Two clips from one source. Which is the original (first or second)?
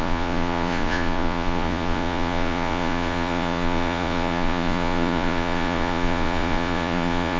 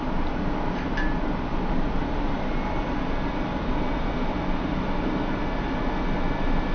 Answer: second